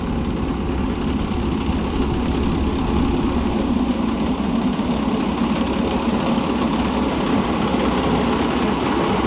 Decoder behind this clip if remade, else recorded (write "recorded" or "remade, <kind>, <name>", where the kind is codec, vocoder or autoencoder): recorded